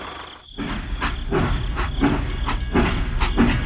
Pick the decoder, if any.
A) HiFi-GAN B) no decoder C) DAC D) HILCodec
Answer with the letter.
B